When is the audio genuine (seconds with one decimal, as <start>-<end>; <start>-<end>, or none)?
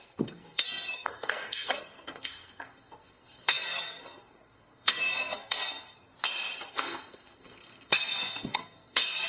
6.1-6.7